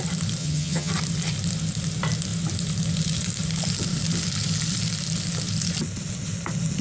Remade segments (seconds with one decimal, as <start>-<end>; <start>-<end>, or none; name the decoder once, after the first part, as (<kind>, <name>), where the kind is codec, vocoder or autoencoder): 0.4-0.9 (vocoder, HiFi-GAN)